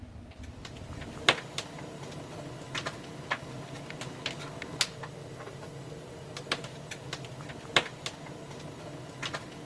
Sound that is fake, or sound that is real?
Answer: real